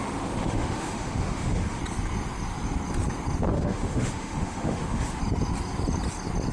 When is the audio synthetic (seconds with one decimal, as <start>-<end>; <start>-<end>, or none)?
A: 0.0-1.8; 3.5-5.2